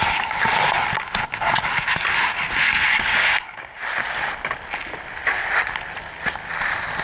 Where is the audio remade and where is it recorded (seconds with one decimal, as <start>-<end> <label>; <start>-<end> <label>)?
0.0-3.1 recorded; 3.1-3.8 remade; 3.8-7.0 recorded